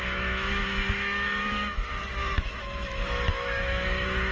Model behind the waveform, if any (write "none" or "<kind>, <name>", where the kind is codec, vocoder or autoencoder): autoencoder, DAC-VAE